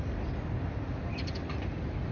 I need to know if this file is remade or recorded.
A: recorded